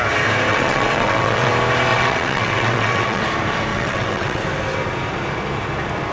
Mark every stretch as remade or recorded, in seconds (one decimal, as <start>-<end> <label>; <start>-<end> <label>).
0.0-0.5 recorded; 0.5-1.5 remade; 1.5-1.9 recorded; 1.9-3.2 remade; 3.2-3.7 recorded; 3.7-4.4 remade; 4.4-6.1 recorded